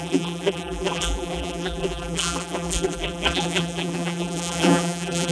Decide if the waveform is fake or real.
fake